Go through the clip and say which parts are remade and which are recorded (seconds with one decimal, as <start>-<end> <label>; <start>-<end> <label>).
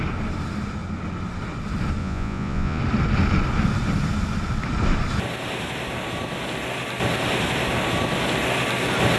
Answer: 0.0-2.0 recorded; 2.0-2.8 remade; 2.8-9.2 recorded